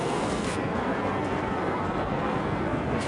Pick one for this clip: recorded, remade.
remade